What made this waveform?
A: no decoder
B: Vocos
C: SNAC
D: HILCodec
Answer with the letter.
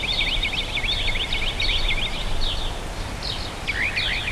A